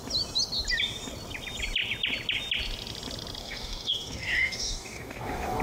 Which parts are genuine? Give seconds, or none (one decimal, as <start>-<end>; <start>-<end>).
0.0-3.4